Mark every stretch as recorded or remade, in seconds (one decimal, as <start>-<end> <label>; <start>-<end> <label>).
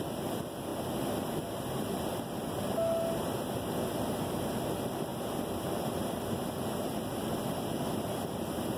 0.0-8.8 recorded